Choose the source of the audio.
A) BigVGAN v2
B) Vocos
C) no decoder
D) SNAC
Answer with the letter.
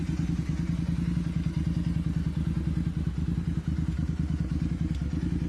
C